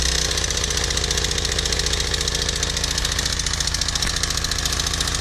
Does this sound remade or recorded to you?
recorded